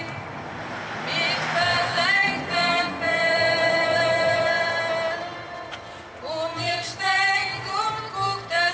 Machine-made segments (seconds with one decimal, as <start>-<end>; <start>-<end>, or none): 1.7-4.7; 6.5-7.9